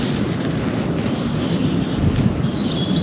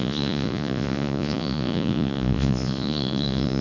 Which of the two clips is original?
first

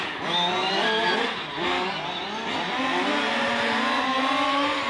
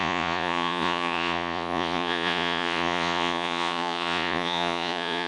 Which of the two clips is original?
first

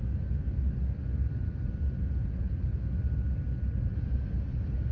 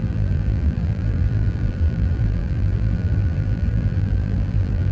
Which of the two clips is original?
first